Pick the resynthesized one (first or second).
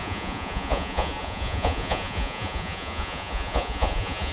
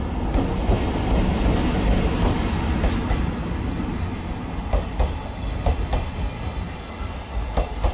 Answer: first